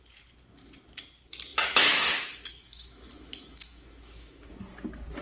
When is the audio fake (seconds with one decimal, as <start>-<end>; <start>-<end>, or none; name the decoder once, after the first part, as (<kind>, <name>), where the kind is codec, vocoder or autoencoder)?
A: 1.5-4.5 (autoencoder, DAC-VAE)